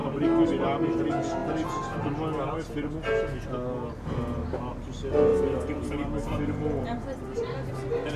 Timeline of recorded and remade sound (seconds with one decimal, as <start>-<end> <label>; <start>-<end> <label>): 0.0-5.3 recorded; 5.3-7.7 remade; 7.7-8.2 recorded